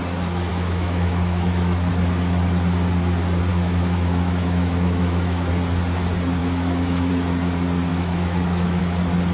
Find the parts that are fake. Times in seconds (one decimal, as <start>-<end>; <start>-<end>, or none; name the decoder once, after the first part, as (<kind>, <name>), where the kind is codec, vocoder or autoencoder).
0.5-1.9 (autoencoder, DAC-VAE); 3.5-5.5; 6.4-7.1; 7.9-8.8

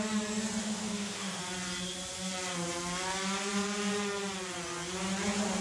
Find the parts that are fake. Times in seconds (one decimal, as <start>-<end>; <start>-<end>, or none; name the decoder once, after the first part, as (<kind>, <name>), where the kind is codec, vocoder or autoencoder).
0.6-1.4 (autoencoder, DAC-VAE)

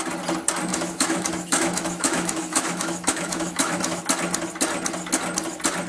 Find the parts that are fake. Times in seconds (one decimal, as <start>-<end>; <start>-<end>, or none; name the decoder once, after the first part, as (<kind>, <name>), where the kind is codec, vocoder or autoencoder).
0.7-4.0 (autoencoder, DAC-VAE)

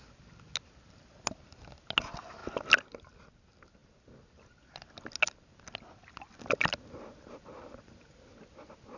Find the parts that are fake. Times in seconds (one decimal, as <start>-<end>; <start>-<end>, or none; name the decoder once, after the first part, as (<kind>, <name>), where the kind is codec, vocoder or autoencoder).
none

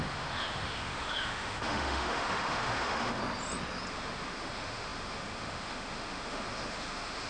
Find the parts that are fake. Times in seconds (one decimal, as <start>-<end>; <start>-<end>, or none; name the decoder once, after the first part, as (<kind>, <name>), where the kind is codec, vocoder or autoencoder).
0.0-3.2 (autoencoder, DAC-VAE); 3.9-7.3

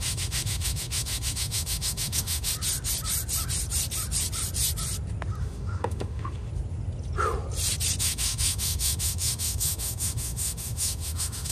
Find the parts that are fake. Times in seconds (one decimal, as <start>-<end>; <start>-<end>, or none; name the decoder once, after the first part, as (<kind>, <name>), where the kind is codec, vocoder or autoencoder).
0.0-2.5 (autoencoder, DAC-VAE); 5.4-6.5; 8.0-11.5

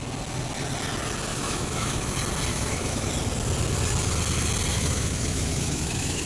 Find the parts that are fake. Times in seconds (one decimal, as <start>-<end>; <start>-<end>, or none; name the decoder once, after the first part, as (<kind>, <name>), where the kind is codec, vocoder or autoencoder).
1.3-2.1 (autoencoder, DAC-VAE); 2.5-3.1; 4.7-6.3

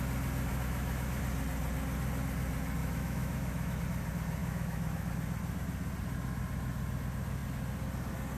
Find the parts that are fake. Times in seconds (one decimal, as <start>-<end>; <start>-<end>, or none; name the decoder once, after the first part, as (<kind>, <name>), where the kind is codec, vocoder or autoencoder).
0.5-1.2 (autoencoder, DAC-VAE); 2.8-3.8; 4.4-5.1